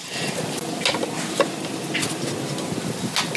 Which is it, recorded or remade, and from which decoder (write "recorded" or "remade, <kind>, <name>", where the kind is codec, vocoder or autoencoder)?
recorded